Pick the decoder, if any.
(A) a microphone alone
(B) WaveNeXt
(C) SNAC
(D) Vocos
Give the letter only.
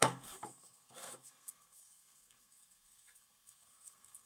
C